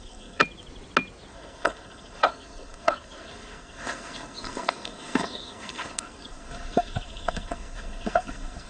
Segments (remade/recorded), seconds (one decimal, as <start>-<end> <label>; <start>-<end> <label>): 0.0-0.4 remade; 0.4-1.3 recorded; 1.3-8.7 remade